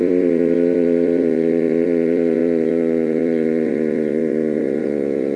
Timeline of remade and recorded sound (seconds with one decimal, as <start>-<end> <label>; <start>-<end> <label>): 0.0-5.4 remade